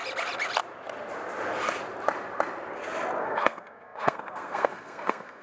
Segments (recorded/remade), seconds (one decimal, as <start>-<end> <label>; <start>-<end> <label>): 0.0-3.2 recorded; 3.2-5.4 remade